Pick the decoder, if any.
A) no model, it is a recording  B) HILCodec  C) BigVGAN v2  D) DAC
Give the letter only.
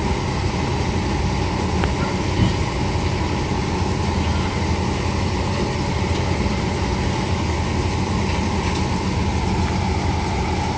A